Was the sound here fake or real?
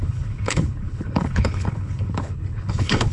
fake